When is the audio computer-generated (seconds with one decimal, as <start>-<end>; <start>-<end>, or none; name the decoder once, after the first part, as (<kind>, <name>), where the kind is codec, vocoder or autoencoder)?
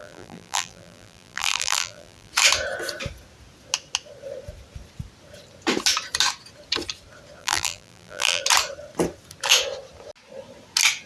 0.0-2.3 (vocoder, BigVGAN v2); 7.4-8.4